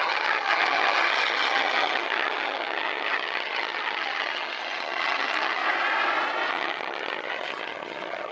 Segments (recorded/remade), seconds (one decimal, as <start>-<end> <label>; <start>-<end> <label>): 0.0-5.6 remade; 5.6-6.5 recorded; 6.5-8.3 remade